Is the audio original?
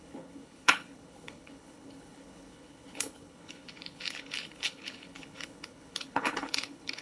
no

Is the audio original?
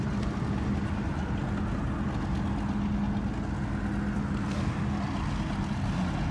yes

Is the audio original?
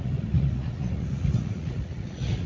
no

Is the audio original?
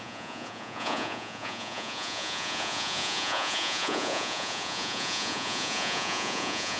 no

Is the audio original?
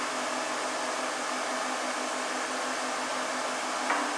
yes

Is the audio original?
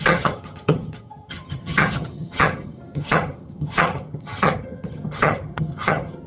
no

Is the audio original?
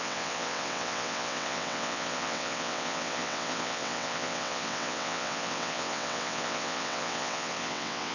no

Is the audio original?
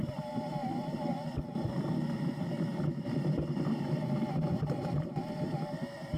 no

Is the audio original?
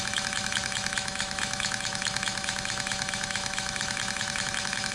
no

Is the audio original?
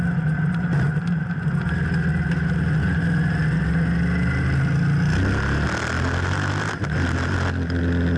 yes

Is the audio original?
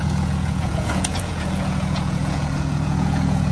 no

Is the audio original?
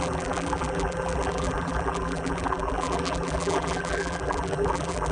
no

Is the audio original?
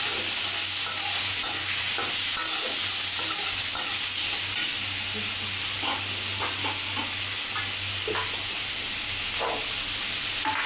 yes